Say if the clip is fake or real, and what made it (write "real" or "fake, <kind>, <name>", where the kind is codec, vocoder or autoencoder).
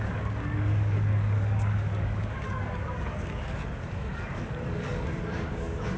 fake, codec, DAC